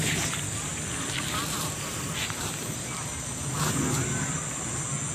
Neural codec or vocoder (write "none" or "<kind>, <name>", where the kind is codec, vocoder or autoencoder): none